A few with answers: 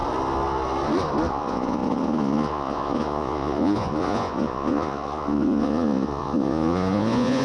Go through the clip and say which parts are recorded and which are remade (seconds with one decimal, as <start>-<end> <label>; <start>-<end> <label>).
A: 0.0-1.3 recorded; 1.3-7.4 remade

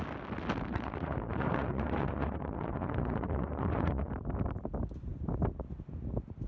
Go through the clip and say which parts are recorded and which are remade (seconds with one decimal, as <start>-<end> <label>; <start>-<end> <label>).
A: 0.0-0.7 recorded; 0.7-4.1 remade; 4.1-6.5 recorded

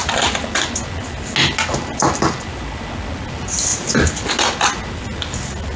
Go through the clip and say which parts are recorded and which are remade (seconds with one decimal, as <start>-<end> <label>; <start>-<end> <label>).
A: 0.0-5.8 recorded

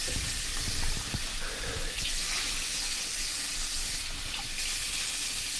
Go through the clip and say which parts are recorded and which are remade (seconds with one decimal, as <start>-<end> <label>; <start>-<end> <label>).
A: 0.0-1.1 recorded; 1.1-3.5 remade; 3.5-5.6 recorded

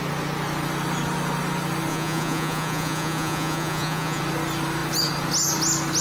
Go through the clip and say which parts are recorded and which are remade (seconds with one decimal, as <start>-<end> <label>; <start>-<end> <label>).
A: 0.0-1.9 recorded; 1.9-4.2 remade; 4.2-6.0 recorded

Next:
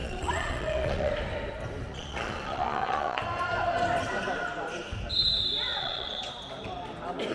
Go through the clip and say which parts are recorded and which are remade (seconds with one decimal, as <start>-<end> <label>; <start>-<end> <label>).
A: 0.0-1.1 remade; 1.1-1.9 recorded; 1.9-3.2 remade; 3.2-5.7 recorded; 5.7-6.3 remade; 6.3-7.3 recorded

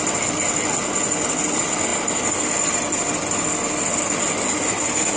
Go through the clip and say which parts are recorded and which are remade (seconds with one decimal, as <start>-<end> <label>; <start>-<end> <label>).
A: 0.0-5.2 recorded